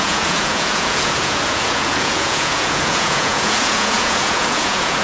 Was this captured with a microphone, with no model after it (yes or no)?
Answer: no